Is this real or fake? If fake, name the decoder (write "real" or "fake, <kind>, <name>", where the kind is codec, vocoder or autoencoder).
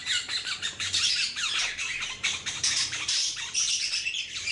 fake, vocoder, BigVGAN v2